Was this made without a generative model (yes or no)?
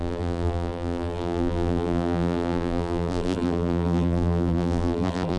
no